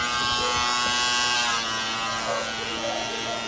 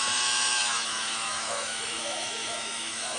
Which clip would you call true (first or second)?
first